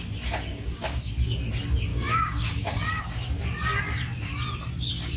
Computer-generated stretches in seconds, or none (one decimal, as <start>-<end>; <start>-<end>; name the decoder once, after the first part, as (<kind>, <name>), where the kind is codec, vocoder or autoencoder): 0.5-1.1 (codec, DAC); 1.9-3.0